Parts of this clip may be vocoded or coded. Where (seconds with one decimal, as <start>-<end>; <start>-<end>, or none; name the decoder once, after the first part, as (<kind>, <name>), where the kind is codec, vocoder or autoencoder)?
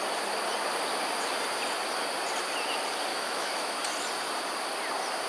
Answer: 3.1-3.8 (autoencoder, DAC-VAE)